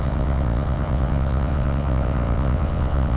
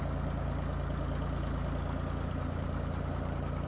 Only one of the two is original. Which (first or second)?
second